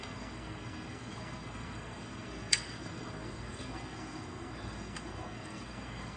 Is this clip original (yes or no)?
no